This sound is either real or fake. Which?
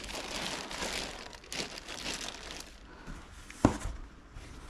real